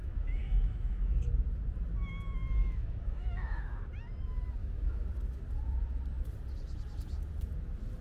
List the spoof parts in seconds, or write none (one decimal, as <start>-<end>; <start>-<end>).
0.0-1.2; 2.6-3.8; 4.6-5.1